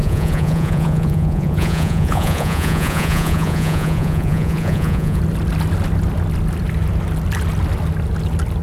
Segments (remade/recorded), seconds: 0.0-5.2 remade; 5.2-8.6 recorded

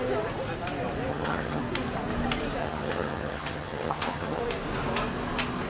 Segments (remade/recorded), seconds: 0.0-1.1 recorded; 1.1-1.6 remade; 1.6-2.6 recorded; 2.6-4.4 remade; 4.4-5.7 recorded

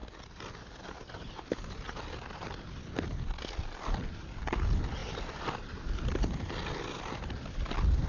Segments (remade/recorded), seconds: 0.0-5.0 recorded; 5.0-6.3 remade; 6.3-8.1 recorded